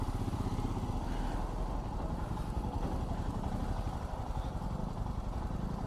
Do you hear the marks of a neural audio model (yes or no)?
no